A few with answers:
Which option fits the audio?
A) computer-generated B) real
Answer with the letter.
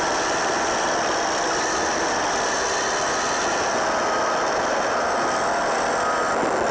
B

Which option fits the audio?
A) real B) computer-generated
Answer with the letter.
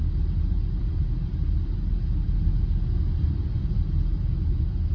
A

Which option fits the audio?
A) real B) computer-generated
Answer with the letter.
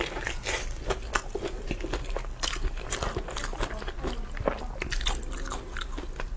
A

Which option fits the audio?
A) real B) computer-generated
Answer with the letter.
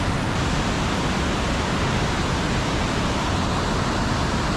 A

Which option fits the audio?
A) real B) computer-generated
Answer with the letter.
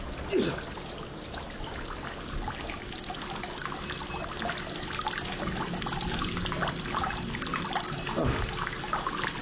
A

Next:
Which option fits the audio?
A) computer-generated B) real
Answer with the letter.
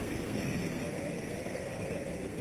A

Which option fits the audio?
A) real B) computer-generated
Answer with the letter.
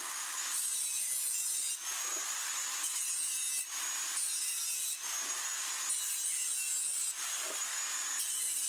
A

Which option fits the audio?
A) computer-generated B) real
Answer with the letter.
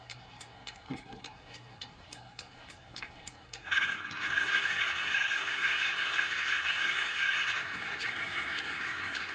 A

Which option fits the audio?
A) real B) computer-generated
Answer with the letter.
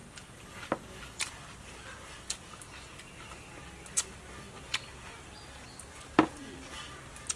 A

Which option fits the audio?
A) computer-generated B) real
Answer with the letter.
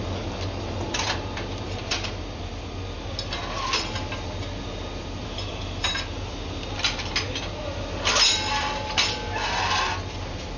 B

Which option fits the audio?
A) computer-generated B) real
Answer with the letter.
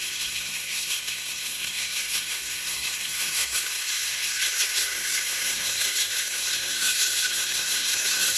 A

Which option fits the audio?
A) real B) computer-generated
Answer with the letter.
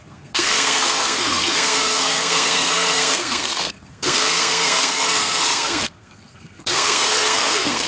B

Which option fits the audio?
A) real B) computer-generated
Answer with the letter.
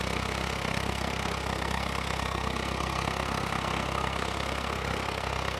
B